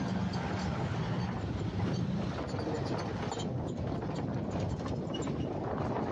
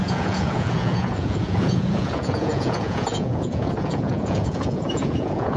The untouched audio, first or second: first